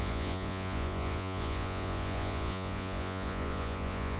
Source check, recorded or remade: remade